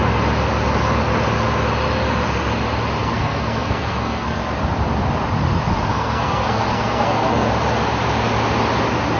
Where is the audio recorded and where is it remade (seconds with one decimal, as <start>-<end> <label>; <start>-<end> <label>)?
0.0-3.0 recorded; 3.0-4.4 remade; 4.4-5.9 recorded; 5.9-7.5 remade; 7.5-9.2 recorded